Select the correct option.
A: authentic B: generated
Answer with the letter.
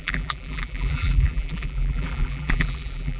B